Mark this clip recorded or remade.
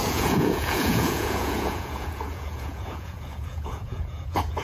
remade